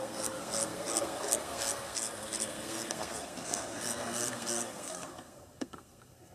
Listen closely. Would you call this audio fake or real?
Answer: fake